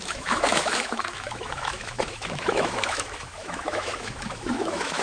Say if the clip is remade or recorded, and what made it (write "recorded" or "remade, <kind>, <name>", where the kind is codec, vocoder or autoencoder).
remade, autoencoder, DAC-VAE